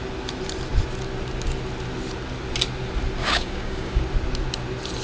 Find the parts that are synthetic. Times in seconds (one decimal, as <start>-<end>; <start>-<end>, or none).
3.2-4.0